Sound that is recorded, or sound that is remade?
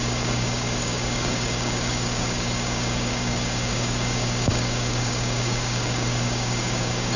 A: remade